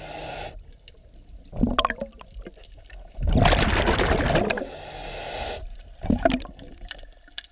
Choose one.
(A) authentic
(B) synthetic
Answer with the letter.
A